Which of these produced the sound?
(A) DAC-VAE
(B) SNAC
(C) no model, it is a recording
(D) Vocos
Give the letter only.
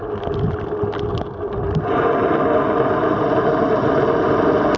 C